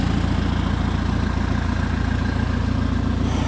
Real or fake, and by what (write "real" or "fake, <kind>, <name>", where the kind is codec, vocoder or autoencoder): real